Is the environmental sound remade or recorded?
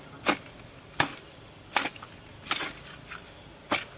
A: recorded